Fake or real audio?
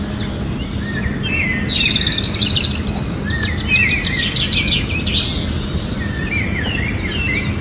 real